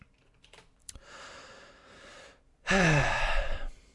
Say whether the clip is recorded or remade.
remade